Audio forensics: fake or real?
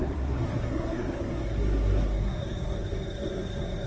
fake